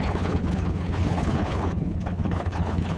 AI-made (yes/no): yes